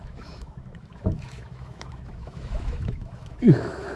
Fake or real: fake